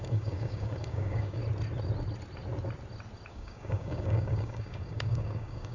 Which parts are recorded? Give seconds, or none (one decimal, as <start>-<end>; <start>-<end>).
1.4-3.3